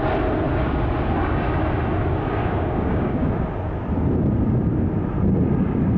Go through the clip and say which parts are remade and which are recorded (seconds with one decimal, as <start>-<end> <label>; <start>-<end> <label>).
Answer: 0.0-2.4 recorded; 2.4-3.3 remade; 3.3-6.0 recorded